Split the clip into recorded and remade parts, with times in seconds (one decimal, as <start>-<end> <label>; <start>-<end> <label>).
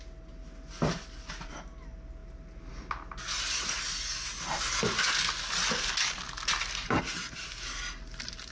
0.0-8.5 recorded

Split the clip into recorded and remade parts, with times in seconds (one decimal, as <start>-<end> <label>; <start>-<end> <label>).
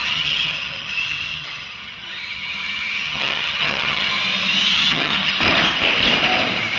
0.0-4.1 remade; 4.1-4.7 recorded; 4.7-5.3 remade; 5.3-6.8 recorded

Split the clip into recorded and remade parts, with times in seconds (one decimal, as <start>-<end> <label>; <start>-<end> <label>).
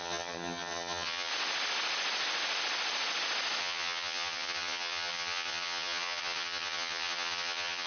0.0-1.3 remade; 1.3-3.6 recorded; 3.6-7.9 remade